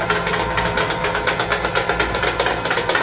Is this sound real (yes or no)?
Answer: yes